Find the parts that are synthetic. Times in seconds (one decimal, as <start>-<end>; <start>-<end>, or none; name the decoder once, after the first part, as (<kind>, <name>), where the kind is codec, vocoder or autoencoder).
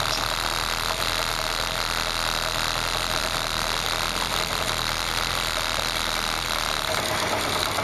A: none